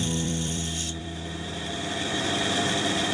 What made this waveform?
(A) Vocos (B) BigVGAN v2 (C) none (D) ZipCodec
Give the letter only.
B